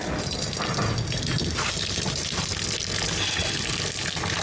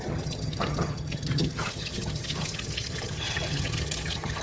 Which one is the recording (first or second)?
first